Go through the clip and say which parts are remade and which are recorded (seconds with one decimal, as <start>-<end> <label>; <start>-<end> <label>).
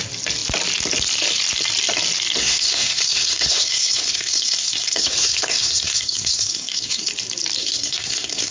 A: 0.0-2.4 recorded; 2.4-7.1 remade; 7.1-7.6 recorded; 7.6-8.5 remade